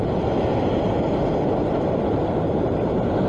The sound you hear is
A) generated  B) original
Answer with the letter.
B